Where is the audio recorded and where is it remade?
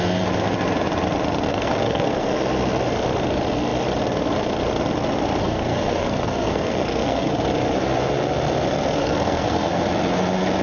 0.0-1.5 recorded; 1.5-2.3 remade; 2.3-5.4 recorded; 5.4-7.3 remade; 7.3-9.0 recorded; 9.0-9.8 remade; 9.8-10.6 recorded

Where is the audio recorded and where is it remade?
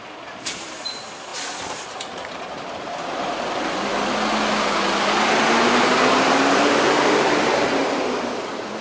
0.0-1.3 remade; 1.3-2.3 recorded; 2.3-3.9 remade; 3.9-6.1 recorded; 6.1-8.8 remade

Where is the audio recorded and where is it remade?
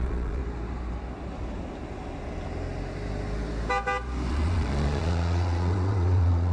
0.0-0.4 remade; 0.4-4.3 recorded; 4.3-6.5 remade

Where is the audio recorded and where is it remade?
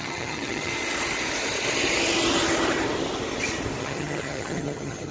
0.0-0.7 remade; 0.7-3.8 recorded; 3.8-5.1 remade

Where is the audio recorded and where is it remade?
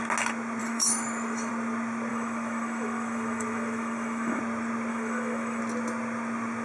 0.0-0.6 recorded; 0.6-1.5 remade; 1.5-2.1 recorded; 2.1-4.4 remade; 4.4-4.9 recorded; 4.9-5.6 remade; 5.6-6.6 recorded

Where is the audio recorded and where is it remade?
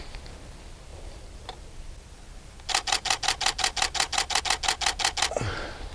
0.0-0.9 recorded; 0.9-4.4 remade; 4.4-5.9 recorded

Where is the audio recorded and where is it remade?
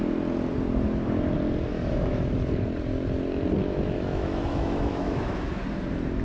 0.0-1.7 recorded; 1.7-2.3 remade; 2.3-3.6 recorded; 3.6-5.6 remade; 5.6-6.2 recorded